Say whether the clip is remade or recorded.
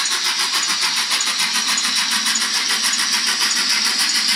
remade